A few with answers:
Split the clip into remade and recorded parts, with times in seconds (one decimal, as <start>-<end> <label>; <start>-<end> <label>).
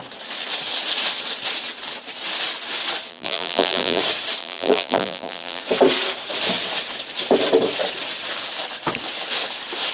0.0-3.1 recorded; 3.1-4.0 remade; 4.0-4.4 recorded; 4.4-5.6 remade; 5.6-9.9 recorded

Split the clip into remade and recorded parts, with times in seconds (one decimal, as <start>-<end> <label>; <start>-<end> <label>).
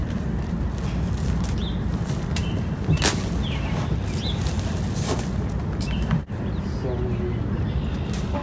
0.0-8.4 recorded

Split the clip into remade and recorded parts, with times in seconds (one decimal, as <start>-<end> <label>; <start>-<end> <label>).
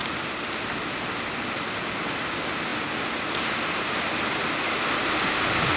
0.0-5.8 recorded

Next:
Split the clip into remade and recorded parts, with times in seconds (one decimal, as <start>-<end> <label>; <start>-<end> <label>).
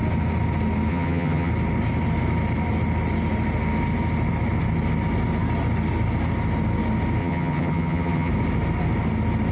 0.0-0.9 recorded; 0.9-1.5 remade; 1.5-7.2 recorded; 7.2-8.3 remade; 8.3-9.5 recorded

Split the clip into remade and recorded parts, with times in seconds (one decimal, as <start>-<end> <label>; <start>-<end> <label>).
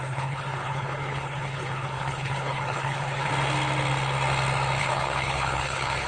0.0-3.3 remade; 3.3-4.8 recorded; 4.8-6.1 remade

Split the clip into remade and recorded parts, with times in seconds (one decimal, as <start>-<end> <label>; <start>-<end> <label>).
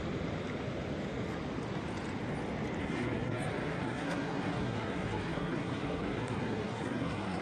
0.0-2.8 recorded; 2.8-7.4 remade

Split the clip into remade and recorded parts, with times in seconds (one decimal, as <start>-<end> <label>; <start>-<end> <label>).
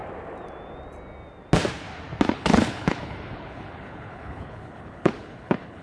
0.0-2.3 recorded; 2.3-5.8 remade